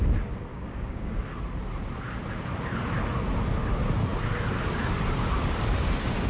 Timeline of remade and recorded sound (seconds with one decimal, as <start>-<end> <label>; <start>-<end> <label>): 0.0-0.5 recorded; 0.5-1.1 remade; 1.1-6.3 recorded